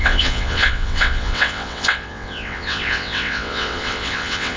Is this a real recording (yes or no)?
no